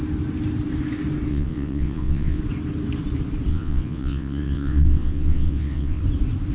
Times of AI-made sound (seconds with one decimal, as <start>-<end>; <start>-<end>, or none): 1.3-2.4; 3.5-6.0